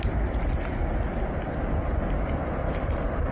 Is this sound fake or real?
real